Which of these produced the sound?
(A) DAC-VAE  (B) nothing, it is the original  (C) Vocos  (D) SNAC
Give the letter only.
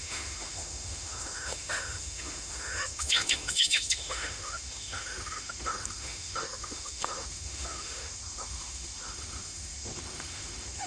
A